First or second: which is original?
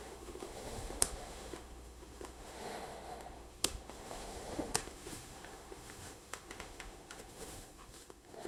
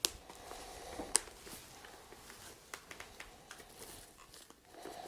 second